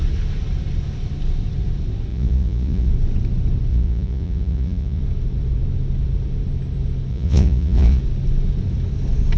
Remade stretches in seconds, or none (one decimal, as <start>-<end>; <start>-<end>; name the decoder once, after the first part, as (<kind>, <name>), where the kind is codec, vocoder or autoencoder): 2.1-2.9 (vocoder, Vocos); 3.7-5.0; 7.1-8.0